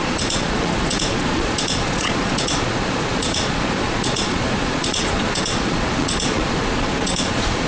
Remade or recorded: remade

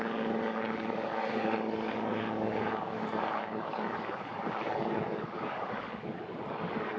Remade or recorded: remade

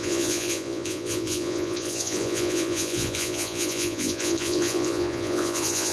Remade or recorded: remade